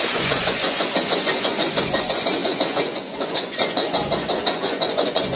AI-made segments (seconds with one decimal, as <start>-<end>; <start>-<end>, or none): 0.0-5.4